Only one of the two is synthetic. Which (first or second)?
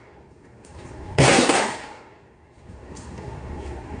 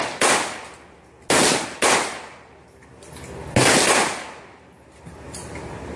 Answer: first